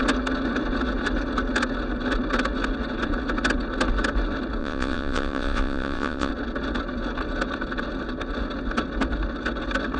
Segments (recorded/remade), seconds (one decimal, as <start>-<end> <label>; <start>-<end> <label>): 0.0-4.6 recorded; 4.6-6.3 remade; 6.3-10.0 recorded